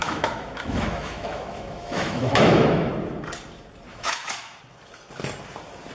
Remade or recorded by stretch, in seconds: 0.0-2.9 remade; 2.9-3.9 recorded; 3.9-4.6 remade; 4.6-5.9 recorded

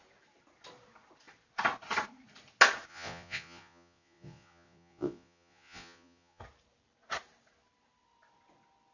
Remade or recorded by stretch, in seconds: 0.0-2.9 recorded; 2.9-6.4 remade; 6.4-8.9 recorded

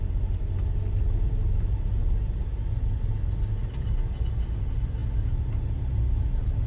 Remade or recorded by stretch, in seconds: 0.0-6.7 recorded

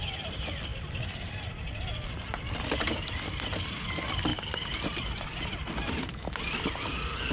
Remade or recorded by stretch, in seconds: 0.0-7.3 recorded

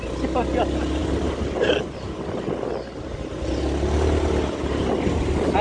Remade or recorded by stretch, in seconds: 0.0-5.6 recorded

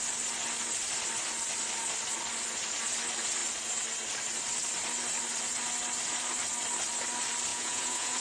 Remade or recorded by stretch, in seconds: 0.0-7.5 recorded; 7.5-8.2 remade

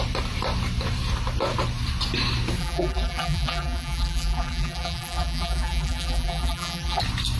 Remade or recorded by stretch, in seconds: 0.0-2.6 recorded; 2.6-7.0 remade; 7.0-7.4 recorded

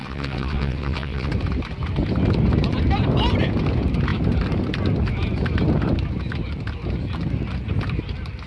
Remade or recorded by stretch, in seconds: 0.0-1.3 remade; 1.3-8.5 recorded